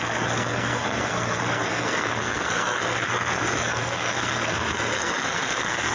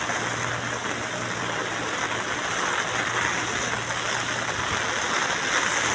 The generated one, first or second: first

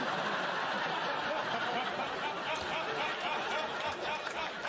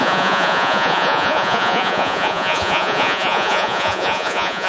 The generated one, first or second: second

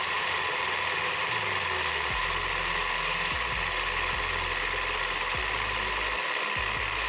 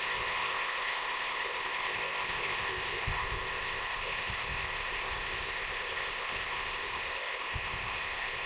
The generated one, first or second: second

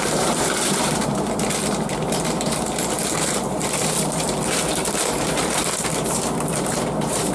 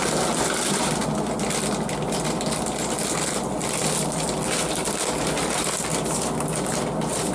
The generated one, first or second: first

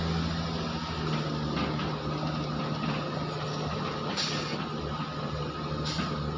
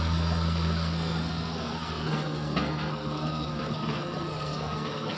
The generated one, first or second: second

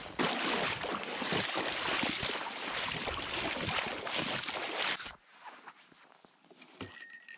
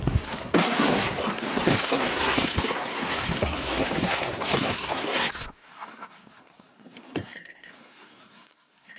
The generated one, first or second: second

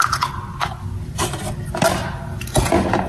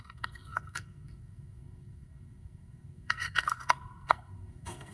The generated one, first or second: second